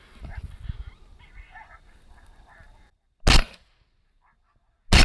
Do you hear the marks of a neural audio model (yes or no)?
no